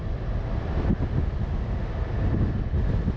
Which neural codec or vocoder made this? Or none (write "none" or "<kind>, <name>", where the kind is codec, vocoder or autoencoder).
none